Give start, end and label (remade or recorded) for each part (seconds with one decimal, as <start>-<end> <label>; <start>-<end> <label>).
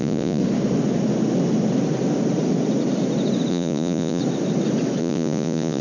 0.0-0.4 remade; 0.4-3.5 recorded; 3.5-4.2 remade; 4.2-5.0 recorded; 5.0-5.8 remade